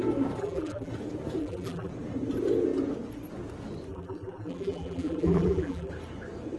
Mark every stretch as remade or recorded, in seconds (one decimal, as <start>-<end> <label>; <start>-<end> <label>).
0.0-0.4 recorded; 0.4-0.9 remade; 0.9-1.4 recorded; 1.4-1.9 remade; 1.9-3.9 recorded; 3.9-5.9 remade; 5.9-6.6 recorded